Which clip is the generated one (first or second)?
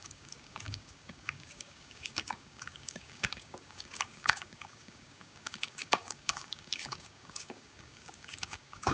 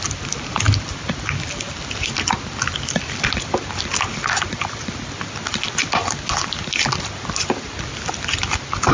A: first